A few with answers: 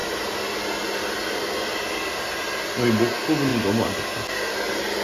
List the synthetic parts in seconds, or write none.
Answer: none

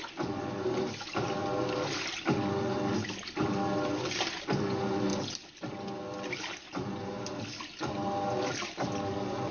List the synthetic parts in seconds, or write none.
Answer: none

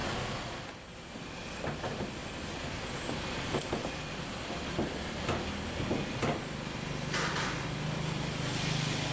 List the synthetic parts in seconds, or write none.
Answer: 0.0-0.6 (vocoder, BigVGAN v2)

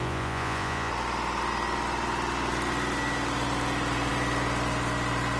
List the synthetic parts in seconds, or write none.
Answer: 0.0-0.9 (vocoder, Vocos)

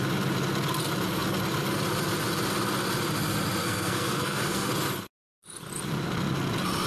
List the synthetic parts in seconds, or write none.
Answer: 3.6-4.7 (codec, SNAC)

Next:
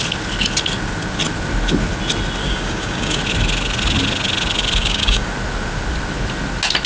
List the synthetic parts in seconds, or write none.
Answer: 2.4-3.2 (codec, DAC); 4.8-5.3